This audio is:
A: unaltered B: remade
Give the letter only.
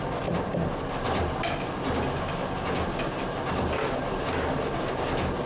A